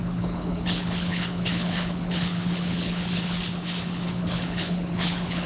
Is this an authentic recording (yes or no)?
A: no